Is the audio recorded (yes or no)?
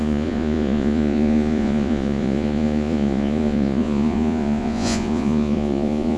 no